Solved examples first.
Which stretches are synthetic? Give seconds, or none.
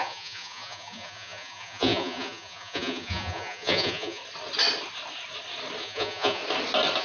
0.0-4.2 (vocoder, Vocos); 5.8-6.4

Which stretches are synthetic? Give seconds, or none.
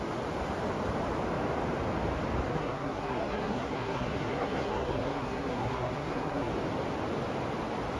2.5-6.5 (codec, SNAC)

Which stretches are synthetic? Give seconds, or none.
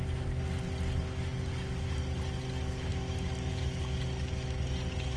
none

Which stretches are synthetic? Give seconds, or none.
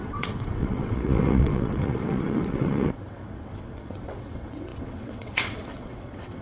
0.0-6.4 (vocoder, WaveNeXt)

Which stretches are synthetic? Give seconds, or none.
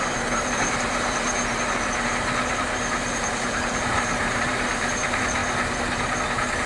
0.0-5.4 (vocoder, BigVGAN v2); 6.3-6.7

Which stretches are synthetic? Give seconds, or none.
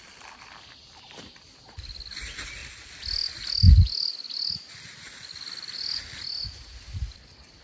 none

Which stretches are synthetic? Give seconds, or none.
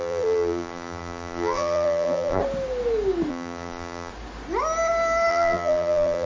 0.0-2.4 (vocoder, BigVGAN v2); 3.3-4.1; 5.3-6.3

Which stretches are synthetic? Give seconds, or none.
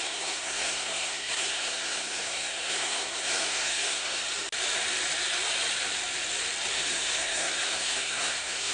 0.0-4.2 (codec, SNAC); 6.7-8.7